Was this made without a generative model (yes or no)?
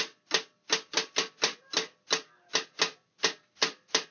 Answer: yes